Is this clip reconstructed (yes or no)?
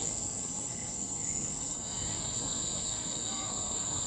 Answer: yes